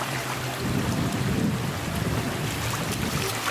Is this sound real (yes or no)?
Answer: no